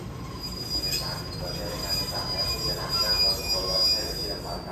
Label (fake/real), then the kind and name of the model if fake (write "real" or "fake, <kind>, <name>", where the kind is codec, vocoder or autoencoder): real